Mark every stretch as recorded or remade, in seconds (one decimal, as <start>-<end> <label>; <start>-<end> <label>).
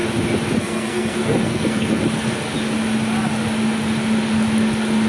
0.0-0.6 recorded; 0.6-2.0 remade; 2.0-5.1 recorded